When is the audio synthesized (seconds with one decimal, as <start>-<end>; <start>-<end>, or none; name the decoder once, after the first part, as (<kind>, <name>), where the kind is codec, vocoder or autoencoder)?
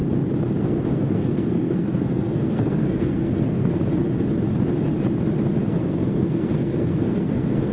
0.6-3.8 (codec, SNAC); 5.6-7.7